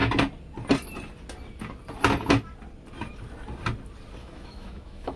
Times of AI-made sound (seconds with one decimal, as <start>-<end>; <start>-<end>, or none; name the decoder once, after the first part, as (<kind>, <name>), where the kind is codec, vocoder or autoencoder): 4.2-5.2 (autoencoder, DAC-VAE)